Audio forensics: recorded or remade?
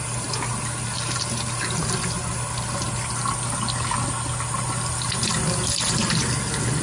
recorded